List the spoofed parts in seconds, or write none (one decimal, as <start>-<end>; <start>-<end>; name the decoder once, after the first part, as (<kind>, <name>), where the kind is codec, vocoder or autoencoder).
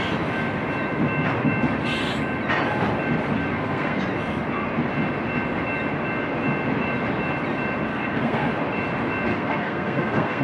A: 3.5-4.0 (codec, SNAC); 7.9-8.5; 9.3-10.4